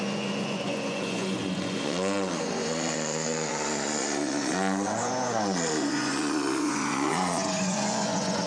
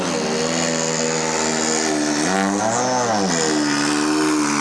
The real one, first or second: second